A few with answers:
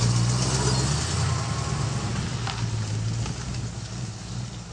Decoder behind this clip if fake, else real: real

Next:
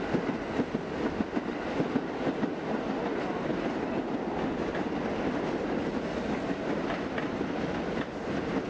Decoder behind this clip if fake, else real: real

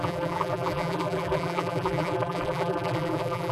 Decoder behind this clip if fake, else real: fake, vocoder, BigVGAN v2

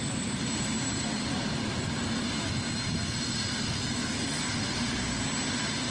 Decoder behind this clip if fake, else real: real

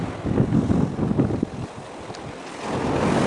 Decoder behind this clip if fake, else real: real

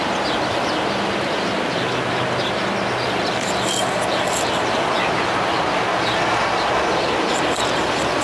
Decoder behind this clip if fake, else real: real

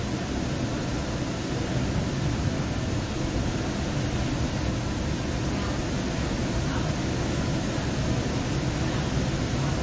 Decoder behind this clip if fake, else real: real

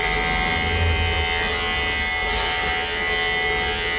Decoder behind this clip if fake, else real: real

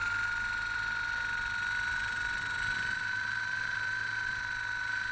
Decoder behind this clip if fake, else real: fake, vocoder, BigVGAN v2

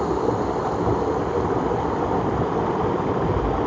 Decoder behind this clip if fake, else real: real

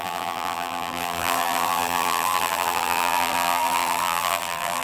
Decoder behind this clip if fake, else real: fake, vocoder, BigVGAN v2